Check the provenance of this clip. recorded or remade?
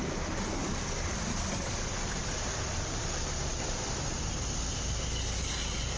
recorded